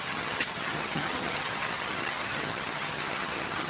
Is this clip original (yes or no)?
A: no